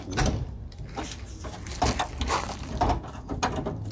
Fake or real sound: real